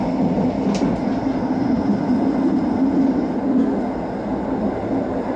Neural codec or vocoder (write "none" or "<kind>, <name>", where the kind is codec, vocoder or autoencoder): none